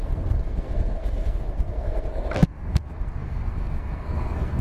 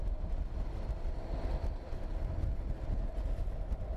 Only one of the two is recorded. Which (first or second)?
second